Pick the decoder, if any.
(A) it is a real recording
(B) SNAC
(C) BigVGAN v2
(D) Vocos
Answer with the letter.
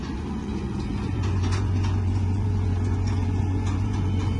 D